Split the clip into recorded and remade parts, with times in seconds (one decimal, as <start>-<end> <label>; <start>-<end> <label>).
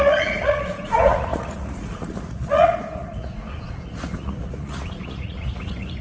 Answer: 0.0-6.0 remade